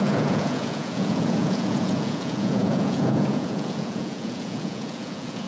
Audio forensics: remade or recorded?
remade